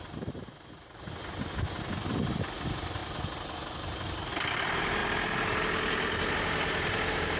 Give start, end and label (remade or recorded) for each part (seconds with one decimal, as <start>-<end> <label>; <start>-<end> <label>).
0.0-3.0 remade; 3.0-4.3 recorded; 4.3-5.0 remade; 5.0-6.3 recorded; 6.3-7.4 remade